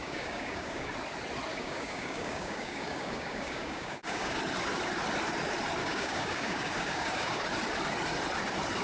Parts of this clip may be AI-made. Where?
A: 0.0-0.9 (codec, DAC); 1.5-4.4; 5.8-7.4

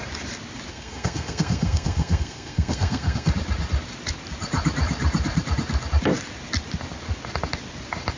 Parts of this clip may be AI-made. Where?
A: 0.7-3.3 (codec, SNAC)

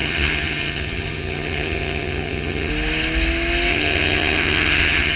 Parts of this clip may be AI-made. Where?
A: 0.0-2.7 (vocoder, HiFi-GAN); 3.7-5.2

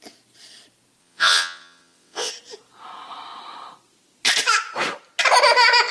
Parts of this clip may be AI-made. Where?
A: 1.0-2.3 (vocoder, WaveNeXt)